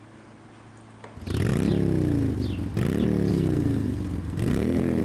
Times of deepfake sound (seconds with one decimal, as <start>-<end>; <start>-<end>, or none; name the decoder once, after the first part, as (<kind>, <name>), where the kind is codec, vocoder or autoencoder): 3.3-5.0 (codec, SNAC)